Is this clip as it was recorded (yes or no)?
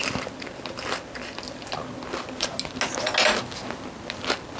yes